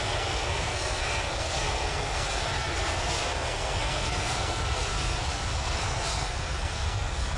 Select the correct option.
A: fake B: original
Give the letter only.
A